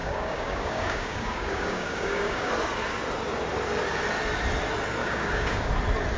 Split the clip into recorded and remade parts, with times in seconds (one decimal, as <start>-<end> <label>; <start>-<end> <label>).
0.0-2.5 remade; 2.5-5.0 recorded; 5.0-5.7 remade; 5.7-6.2 recorded